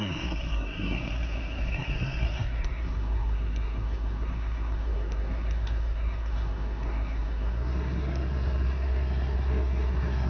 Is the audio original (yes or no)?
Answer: no